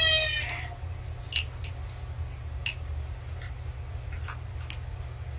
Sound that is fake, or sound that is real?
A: real